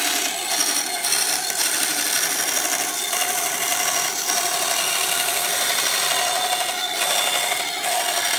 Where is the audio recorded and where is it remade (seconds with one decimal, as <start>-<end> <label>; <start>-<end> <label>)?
0.0-0.6 recorded; 0.6-2.9 remade; 2.9-8.4 recorded